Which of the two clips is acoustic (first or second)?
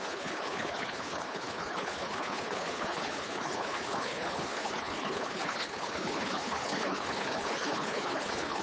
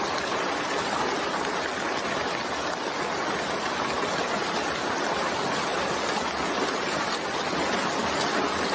second